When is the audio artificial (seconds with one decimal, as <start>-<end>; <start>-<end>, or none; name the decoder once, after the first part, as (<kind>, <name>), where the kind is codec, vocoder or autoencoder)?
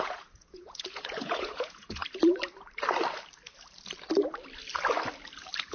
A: 0.0-2.0 (vocoder, Vocos)